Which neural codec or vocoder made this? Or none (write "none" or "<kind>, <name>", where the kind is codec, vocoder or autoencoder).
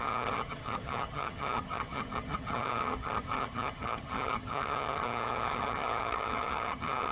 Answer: vocoder, HiFi-GAN